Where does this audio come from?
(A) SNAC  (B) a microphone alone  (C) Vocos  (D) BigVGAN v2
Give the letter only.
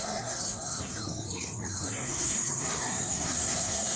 A